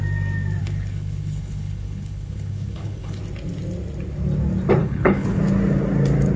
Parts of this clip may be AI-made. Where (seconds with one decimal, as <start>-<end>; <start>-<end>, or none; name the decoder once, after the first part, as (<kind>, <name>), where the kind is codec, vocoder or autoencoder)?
0.6-3.2 (codec, HILCodec); 4.8-5.4